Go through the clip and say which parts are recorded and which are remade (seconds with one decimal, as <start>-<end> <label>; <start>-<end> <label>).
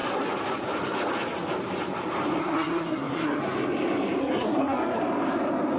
0.0-2.4 recorded; 2.4-3.4 remade; 3.4-4.2 recorded; 4.2-5.0 remade; 5.0-5.8 recorded